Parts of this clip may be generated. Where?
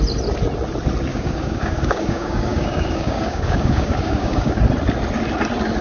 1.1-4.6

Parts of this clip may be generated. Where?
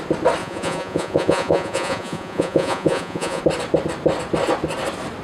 0.4-3.4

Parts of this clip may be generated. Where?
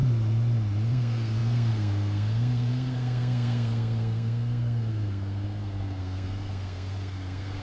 0.9-7.6